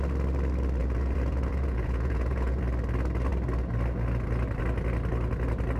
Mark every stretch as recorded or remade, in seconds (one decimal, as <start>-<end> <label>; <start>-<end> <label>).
0.0-0.8 recorded; 0.8-2.6 remade; 2.6-5.8 recorded